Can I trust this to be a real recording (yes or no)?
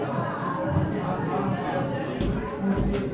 yes